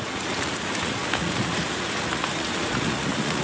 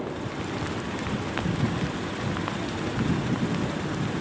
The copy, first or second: first